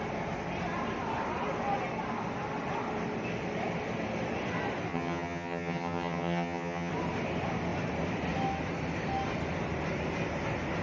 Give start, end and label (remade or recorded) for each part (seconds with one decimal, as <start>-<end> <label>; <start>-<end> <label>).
0.0-4.9 recorded; 4.9-6.9 remade; 6.9-10.8 recorded